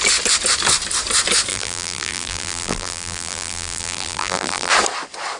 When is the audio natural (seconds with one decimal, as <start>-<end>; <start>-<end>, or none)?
0.0-1.5; 4.7-5.4